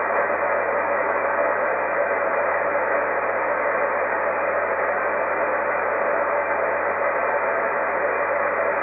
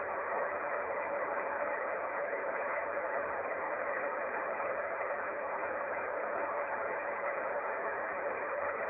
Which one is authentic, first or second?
first